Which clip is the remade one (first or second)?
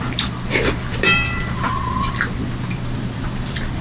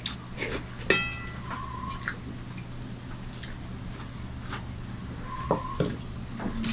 first